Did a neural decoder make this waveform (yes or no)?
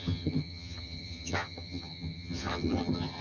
yes